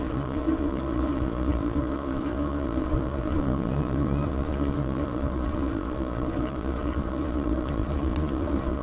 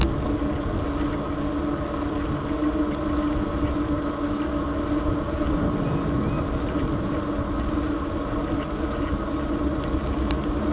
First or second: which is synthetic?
first